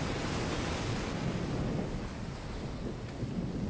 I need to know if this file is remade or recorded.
recorded